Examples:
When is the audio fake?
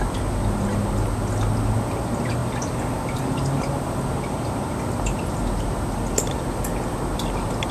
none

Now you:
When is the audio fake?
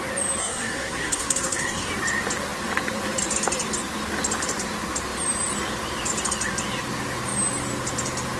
0.4-1.9